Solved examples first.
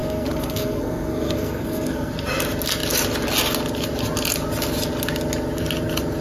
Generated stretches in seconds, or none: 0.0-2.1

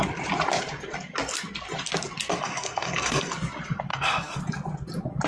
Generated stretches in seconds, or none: 2.3-3.3; 3.9-4.4